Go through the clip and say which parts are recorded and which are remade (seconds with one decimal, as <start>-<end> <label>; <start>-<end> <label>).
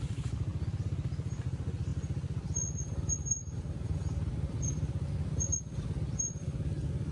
0.0-7.1 recorded